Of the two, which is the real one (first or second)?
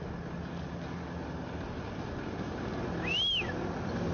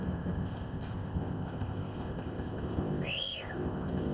first